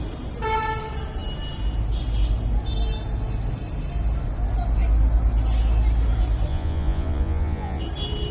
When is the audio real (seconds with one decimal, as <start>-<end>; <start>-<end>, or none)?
0.0-6.5; 7.8-8.3